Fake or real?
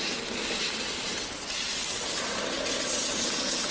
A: real